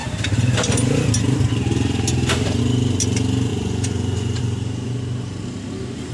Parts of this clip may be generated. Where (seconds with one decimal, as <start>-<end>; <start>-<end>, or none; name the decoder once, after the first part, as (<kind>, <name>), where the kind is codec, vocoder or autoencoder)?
3.5-4.4 (vocoder, Vocos)

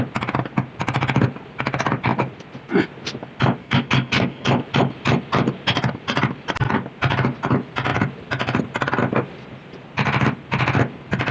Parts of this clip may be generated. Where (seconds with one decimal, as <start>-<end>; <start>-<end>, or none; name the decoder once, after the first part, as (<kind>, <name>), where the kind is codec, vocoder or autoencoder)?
3.6-4.5 (codec, SNAC)

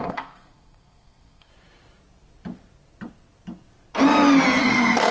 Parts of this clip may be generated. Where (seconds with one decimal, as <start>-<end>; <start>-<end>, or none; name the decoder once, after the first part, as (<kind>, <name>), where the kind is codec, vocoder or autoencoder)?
0.0-1.5 (codec, SNAC); 4.6-5.1

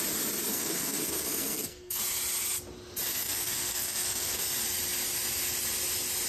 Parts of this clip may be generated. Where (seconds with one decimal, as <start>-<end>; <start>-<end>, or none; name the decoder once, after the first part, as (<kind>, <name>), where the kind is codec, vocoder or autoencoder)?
0.5-2.0 (codec, SNAC); 3.1-4.4

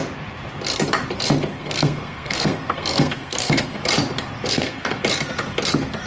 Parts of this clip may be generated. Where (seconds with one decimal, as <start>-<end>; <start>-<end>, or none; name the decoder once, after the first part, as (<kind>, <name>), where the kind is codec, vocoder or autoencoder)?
1.5-3.8 (codec, SNAC); 4.5-5.0